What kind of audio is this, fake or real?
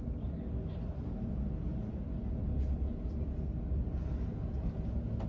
real